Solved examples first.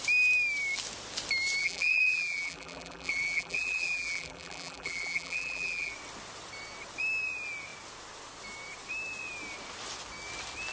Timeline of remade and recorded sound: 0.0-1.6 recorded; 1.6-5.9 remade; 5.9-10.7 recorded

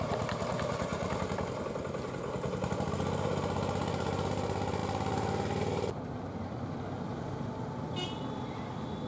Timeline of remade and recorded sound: 0.0-9.1 recorded

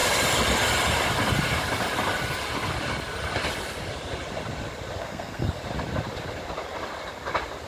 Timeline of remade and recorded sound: 0.0-5.0 recorded; 5.0-5.5 remade; 5.5-7.7 recorded